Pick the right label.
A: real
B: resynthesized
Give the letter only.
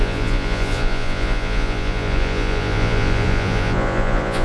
B